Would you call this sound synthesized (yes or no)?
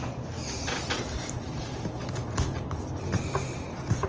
no